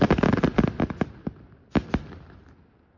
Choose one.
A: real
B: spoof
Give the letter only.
A